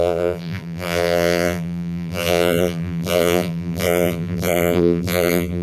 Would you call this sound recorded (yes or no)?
no